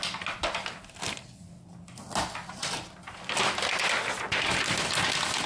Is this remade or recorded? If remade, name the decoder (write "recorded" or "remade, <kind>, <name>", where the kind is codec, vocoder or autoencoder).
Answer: recorded